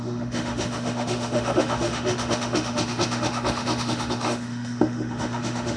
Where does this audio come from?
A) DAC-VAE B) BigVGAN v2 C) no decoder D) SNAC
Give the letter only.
A